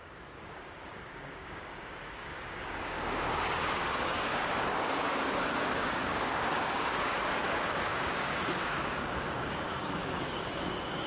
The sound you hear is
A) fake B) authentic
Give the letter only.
A